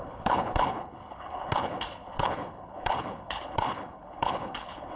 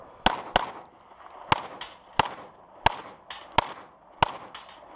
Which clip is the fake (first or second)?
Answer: first